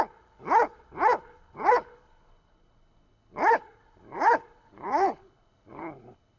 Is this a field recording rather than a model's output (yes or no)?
no